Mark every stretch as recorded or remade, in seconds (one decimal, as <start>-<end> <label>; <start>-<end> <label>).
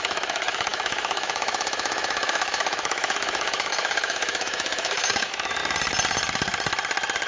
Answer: 0.0-5.6 remade; 5.6-7.3 recorded